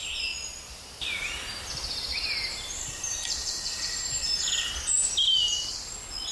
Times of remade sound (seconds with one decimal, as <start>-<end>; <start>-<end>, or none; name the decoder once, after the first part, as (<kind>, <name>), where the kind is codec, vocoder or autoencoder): 2.8-4.7 (vocoder, BigVGAN v2)